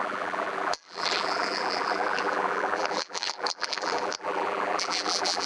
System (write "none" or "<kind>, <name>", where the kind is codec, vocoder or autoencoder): vocoder, BigVGAN v2